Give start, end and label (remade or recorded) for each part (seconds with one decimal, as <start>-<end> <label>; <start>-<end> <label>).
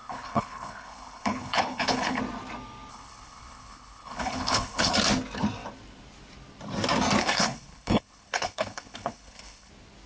0.0-2.2 remade; 2.2-2.9 recorded; 2.9-4.9 remade; 4.9-7.2 recorded; 7.2-9.7 remade; 9.7-10.1 recorded